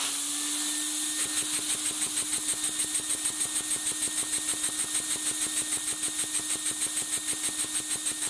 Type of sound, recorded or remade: recorded